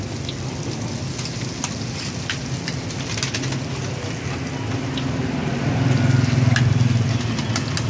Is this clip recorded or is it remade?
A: recorded